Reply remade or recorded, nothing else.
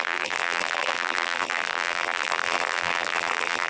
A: remade